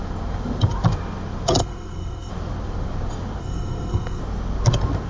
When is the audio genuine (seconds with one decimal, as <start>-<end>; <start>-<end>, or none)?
0.0-1.6; 2.3-3.4; 4.2-5.1